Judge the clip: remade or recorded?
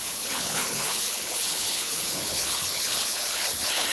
remade